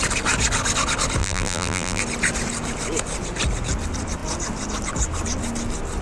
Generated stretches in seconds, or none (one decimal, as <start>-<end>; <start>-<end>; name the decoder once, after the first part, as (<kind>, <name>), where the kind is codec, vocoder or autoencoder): 1.2-2.0 (vocoder, BigVGAN v2)